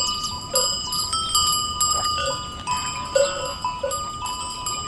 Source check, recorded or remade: recorded